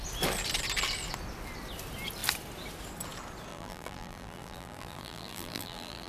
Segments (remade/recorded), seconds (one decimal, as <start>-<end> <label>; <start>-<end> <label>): 0.0-3.5 recorded; 3.5-6.1 remade